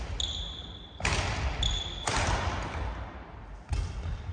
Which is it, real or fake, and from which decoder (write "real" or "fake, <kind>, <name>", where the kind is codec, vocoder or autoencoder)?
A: real